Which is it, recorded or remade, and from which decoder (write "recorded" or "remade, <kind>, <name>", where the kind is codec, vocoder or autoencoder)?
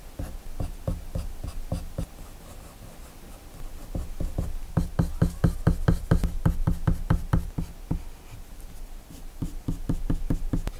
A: recorded